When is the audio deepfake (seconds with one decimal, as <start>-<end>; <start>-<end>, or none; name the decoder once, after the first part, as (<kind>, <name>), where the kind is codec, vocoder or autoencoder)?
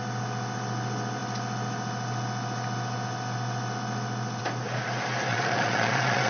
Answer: 5.3-6.3 (vocoder, Vocos)